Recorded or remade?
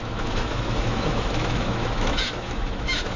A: remade